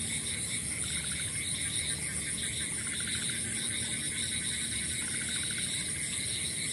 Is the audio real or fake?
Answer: real